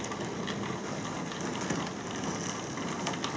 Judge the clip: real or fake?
real